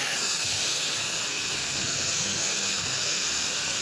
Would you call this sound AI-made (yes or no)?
yes